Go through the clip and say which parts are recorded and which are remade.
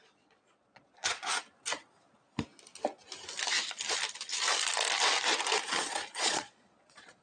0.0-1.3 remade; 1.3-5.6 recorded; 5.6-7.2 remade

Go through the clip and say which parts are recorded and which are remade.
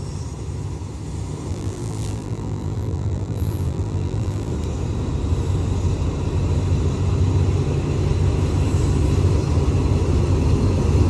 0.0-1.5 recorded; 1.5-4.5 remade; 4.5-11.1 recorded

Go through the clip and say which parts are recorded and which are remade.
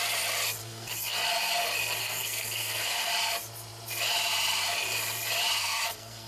0.0-0.6 recorded; 0.6-1.2 remade; 1.2-2.0 recorded; 2.0-3.1 remade; 3.1-5.6 recorded; 5.6-6.3 remade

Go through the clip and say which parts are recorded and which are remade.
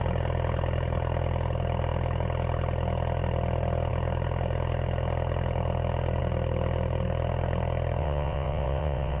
0.0-8.0 recorded; 8.0-9.2 remade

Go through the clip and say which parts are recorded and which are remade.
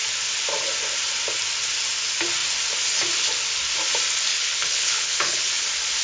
0.0-4.3 recorded; 4.3-5.5 remade; 5.5-6.0 recorded